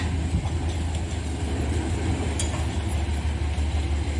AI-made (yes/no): no